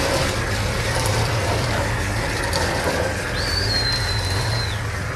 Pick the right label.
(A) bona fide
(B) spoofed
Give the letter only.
A